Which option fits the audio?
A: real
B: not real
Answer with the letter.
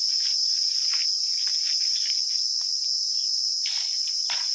A